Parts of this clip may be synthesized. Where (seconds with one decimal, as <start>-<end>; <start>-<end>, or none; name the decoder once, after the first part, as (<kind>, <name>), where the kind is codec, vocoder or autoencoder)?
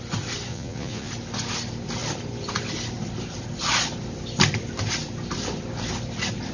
0.5-1.1 (vocoder, Vocos)